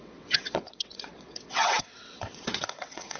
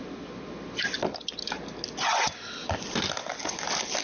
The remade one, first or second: first